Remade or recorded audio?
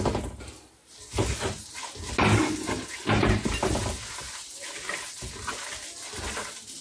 recorded